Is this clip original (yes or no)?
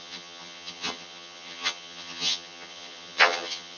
no